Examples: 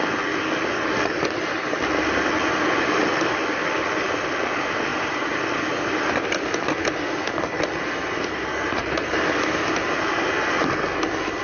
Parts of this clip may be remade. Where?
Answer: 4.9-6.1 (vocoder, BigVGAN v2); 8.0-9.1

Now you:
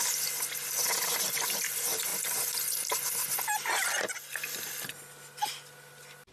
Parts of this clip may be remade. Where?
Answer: none

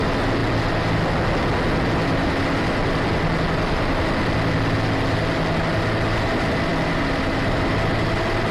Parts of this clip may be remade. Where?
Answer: 6.7-7.7 (vocoder, BigVGAN v2)

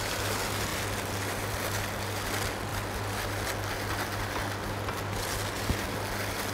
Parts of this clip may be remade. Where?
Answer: none

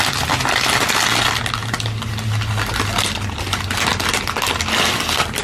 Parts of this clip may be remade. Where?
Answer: none

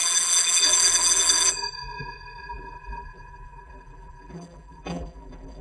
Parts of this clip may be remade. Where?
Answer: 0.0-5.6 (vocoder, BigVGAN v2)

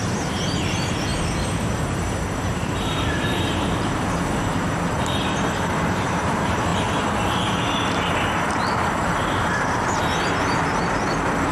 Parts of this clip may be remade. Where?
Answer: 0.0-6.7 (vocoder, BigVGAN v2); 8.4-11.5